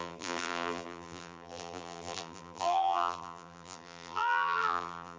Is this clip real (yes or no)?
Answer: no